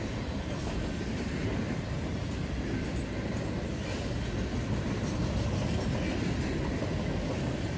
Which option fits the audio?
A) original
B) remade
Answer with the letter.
A